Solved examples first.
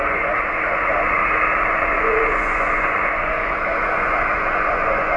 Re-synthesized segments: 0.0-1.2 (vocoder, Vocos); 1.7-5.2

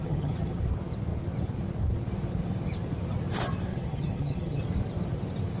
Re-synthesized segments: 0.0-0.6 (vocoder, HiFi-GAN); 3.7-4.6

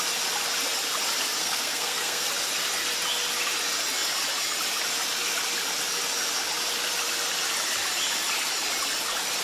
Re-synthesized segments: 1.4-2.3 (codec, SNAC)

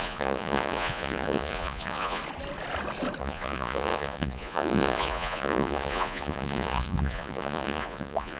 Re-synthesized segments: 0.0-2.2 (vocoder, Vocos); 3.2-8.4

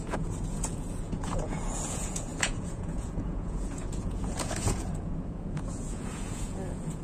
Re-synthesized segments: 0.0-7.0 (vocoder, Vocos)